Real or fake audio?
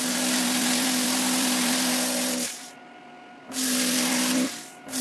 fake